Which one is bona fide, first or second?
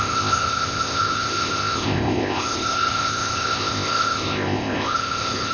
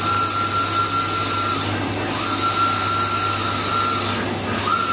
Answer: second